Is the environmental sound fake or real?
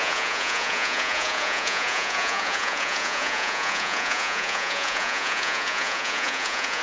fake